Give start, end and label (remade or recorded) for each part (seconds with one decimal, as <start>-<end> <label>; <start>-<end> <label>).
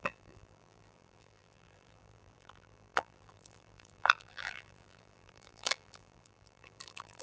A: 0.0-7.2 remade